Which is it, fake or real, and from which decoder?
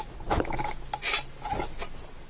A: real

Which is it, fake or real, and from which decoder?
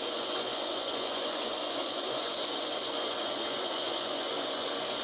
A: fake, vocoder, Vocos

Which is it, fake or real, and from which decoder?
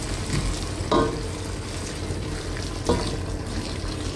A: real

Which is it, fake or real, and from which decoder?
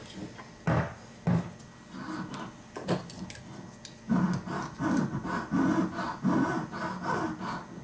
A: real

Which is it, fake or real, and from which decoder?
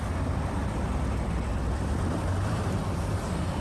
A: fake, vocoder, BigVGAN v2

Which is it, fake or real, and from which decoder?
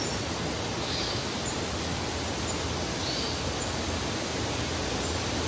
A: real